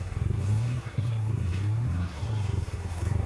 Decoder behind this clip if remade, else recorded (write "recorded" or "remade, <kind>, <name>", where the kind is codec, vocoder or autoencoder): remade, codec, SNAC